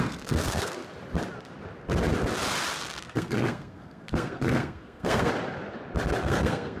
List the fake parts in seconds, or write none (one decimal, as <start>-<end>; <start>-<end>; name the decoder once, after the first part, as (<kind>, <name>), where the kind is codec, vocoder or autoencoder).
0.0-0.8 (codec, SNAC); 3.0-5.3; 6.2-6.8